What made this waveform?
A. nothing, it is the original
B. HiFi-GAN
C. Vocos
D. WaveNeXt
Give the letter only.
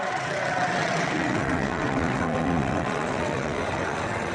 D